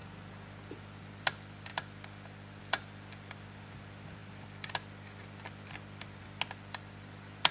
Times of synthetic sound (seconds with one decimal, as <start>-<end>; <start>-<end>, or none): none